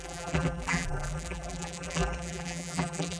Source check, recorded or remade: remade